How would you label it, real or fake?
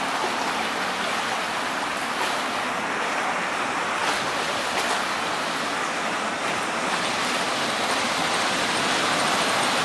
real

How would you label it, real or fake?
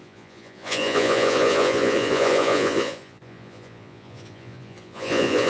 fake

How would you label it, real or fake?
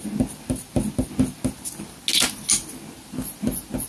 real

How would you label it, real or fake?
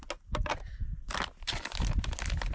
real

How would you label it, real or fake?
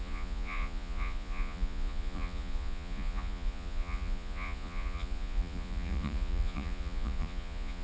fake